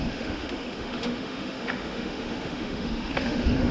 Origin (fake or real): fake